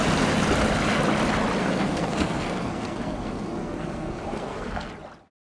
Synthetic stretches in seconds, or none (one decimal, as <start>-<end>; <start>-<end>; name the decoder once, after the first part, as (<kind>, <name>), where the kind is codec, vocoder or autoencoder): 1.6-4.9 (codec, SNAC)